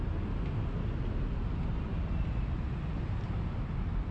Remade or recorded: recorded